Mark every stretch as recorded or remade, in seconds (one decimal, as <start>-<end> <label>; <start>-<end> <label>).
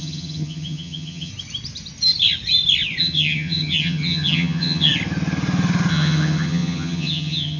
0.0-1.3 remade; 1.3-3.0 recorded; 3.0-4.9 remade; 4.9-5.9 recorded; 5.9-7.6 remade